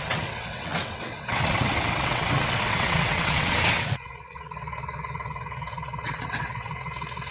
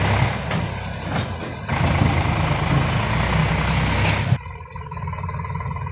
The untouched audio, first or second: second